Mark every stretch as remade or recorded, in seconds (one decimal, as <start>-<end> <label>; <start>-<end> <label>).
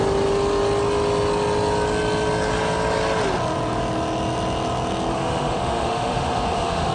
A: 0.0-5.1 recorded; 5.1-6.9 remade